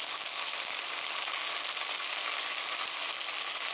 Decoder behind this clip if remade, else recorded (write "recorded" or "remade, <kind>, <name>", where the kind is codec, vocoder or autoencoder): recorded